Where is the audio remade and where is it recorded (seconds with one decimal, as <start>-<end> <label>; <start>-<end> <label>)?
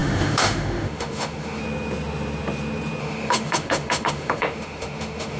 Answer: 0.0-1.6 remade; 1.6-3.0 recorded; 3.0-5.4 remade